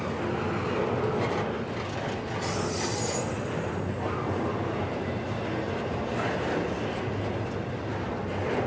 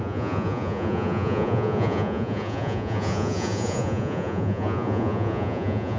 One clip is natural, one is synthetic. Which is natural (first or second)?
first